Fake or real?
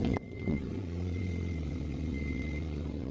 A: fake